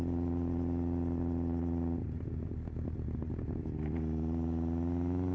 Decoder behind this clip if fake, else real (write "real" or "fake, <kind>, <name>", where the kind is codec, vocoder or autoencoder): real